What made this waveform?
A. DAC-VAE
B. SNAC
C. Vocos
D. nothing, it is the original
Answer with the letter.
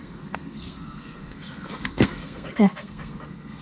B